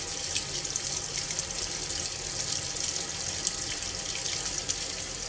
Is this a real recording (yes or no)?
yes